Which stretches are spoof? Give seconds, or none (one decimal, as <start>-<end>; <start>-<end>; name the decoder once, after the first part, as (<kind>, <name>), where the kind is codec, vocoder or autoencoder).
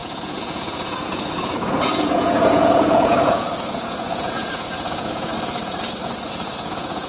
0.0-5.3 (vocoder, Vocos); 6.3-7.1